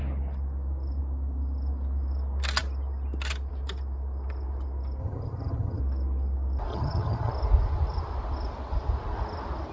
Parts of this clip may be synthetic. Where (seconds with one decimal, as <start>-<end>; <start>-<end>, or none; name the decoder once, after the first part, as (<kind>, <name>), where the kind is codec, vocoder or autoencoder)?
5.0-5.8 (vocoder, HiFi-GAN); 6.7-7.3